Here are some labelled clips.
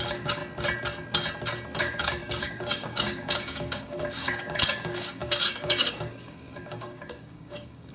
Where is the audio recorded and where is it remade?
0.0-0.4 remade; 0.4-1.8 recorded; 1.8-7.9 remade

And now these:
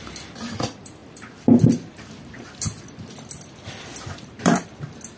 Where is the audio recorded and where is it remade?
0.0-5.2 recorded

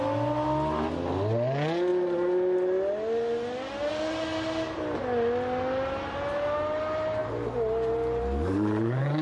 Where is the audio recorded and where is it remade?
0.0-9.2 recorded

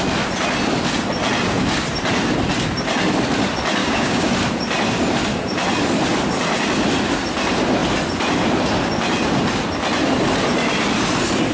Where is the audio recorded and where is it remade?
0.0-3.8 recorded; 3.8-4.3 remade; 4.3-11.5 recorded